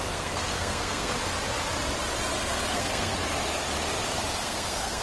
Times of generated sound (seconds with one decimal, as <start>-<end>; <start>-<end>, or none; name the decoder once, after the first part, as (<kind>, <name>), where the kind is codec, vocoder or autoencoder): 0.0-1.1 (codec, SNAC); 2.7-3.2; 4.4-5.0